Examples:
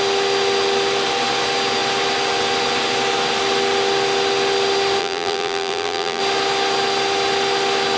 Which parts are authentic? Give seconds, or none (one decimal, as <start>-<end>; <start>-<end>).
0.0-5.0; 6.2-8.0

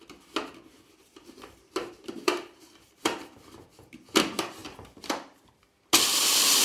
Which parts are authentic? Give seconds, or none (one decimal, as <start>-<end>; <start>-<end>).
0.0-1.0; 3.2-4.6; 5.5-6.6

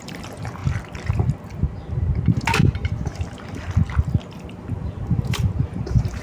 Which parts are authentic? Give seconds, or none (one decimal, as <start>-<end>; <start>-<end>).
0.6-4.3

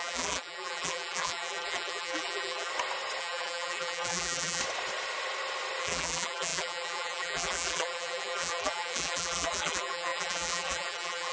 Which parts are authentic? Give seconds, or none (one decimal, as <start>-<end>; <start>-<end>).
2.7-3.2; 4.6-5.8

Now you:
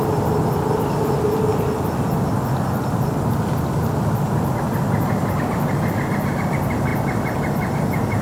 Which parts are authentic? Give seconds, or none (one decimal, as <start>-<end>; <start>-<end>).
0.0-8.2

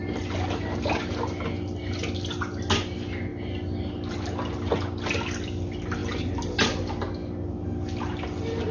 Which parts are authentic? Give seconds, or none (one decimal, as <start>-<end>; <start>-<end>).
0.0-8.7

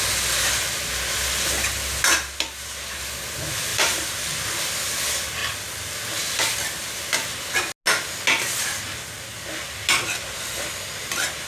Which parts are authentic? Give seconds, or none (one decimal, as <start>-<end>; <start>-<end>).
0.0-3.7; 4.5-11.5